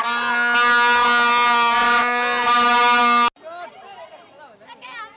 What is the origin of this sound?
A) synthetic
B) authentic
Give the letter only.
B